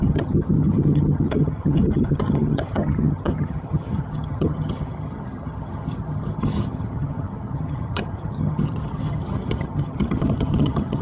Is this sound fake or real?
fake